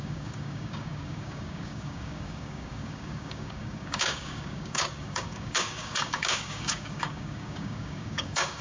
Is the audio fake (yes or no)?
yes